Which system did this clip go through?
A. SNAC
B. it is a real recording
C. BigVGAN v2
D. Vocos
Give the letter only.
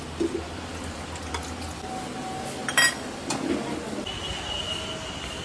B